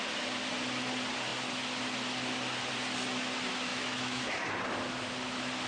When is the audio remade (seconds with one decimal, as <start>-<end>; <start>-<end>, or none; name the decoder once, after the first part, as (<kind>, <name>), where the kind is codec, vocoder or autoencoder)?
3.7-4.5 (autoencoder, DAC-VAE)